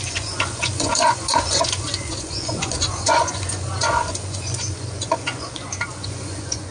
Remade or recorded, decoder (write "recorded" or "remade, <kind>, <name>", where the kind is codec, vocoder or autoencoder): remade, vocoder, Vocos